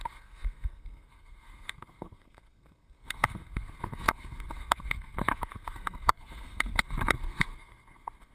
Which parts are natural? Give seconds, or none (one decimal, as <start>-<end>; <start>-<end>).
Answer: none